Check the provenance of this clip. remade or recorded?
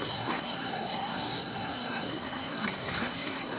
remade